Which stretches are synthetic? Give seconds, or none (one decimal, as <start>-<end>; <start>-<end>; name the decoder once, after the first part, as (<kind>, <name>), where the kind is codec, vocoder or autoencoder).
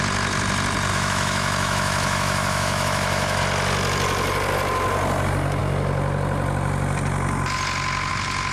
0.9-3.4 (autoencoder, DAC-VAE)